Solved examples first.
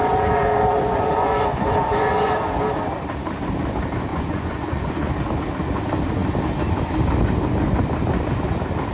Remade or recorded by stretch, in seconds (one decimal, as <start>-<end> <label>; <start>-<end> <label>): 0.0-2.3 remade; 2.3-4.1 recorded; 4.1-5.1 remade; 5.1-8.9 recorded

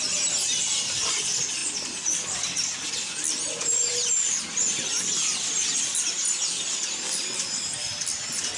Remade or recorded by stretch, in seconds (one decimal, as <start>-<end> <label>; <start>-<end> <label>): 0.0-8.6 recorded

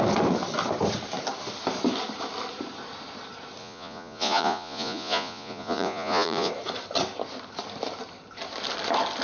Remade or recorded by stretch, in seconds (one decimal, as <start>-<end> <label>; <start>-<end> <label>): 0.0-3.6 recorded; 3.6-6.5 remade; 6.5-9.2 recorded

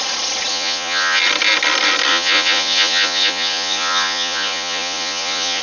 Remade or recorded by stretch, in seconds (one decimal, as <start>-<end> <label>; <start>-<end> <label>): 0.0-0.5 recorded; 0.5-1.2 remade; 1.2-2.1 recorded; 2.1-5.6 remade

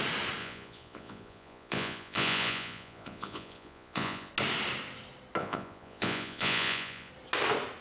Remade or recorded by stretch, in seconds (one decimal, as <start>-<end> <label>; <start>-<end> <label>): 0.0-0.4 recorded; 0.4-4.3 remade; 4.3-5.4 recorded; 5.4-7.1 remade; 7.1-7.8 recorded

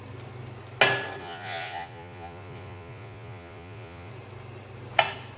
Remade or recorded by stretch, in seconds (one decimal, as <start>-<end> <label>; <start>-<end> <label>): 0.0-1.2 recorded; 1.2-4.1 remade; 4.1-5.4 recorded

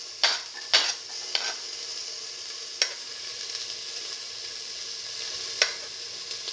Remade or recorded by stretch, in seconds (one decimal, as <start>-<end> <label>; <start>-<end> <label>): 0.0-6.5 recorded

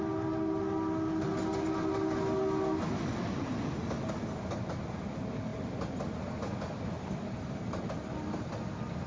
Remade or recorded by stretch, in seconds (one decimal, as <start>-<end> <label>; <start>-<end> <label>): 0.0-9.1 recorded